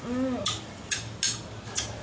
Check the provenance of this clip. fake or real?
real